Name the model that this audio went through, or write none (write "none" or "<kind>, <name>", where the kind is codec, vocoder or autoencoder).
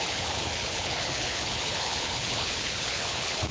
codec, HILCodec